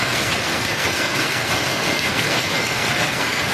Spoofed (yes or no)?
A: yes